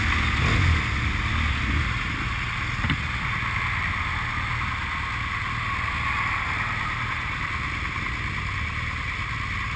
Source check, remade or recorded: recorded